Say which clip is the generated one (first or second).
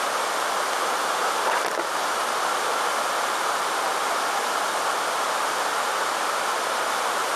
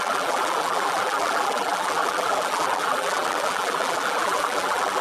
second